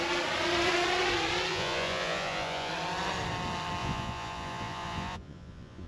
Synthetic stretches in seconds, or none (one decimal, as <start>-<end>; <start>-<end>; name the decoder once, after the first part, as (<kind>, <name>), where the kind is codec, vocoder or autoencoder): 1.5-2.7 (vocoder, Vocos); 3.8-5.9